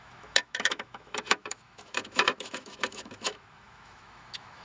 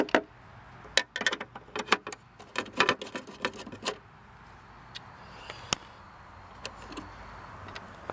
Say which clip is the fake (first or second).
first